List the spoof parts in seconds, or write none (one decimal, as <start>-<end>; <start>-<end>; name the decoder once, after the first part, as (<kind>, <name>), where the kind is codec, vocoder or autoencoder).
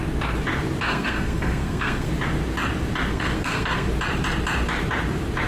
0.9-2.1 (codec, SNAC); 3.1-3.9